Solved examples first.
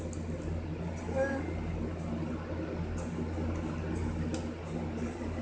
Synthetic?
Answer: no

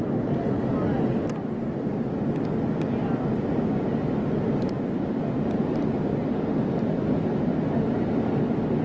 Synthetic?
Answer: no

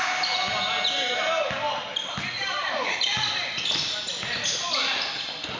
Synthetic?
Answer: no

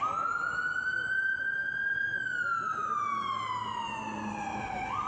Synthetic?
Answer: no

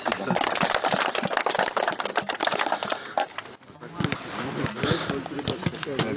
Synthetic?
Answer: no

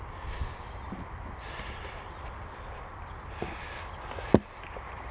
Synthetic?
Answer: no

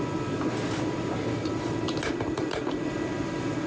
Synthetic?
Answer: no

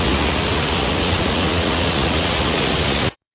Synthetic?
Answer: yes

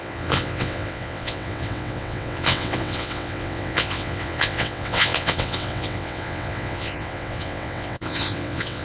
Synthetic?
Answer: yes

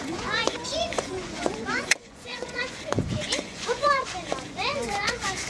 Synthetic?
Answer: yes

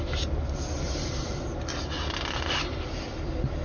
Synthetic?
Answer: no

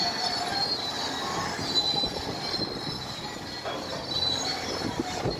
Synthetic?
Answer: no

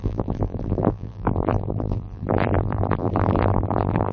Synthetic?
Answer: yes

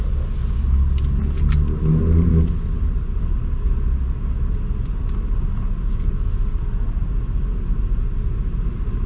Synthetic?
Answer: no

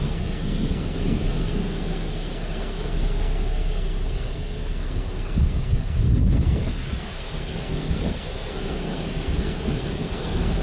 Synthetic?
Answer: yes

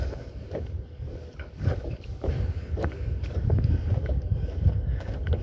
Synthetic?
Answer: yes